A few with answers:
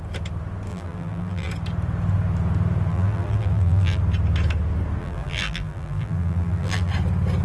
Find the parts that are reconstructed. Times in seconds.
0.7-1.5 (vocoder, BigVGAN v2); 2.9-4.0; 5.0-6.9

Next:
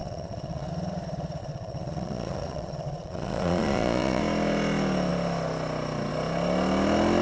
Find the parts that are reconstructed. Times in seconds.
0.0-0.7 (vocoder, Vocos); 1.4-4.2

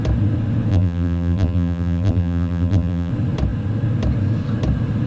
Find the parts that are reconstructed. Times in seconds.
0.7-3.1 (vocoder, BigVGAN v2)

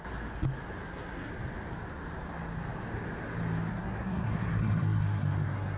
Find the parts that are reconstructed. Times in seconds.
0.8-1.3 (codec, SNAC); 3.7-5.8

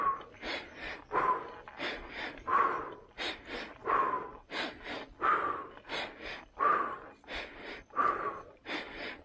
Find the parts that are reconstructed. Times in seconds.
none

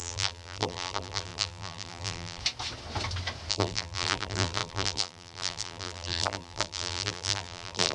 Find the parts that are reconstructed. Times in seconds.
0.0-2.4 (vocoder, BigVGAN v2); 3.5-7.9

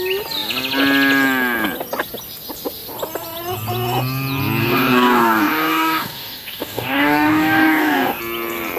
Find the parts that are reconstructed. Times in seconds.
4.6-8.2 (codec, DAC)

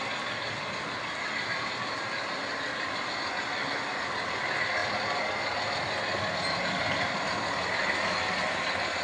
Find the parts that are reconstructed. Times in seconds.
none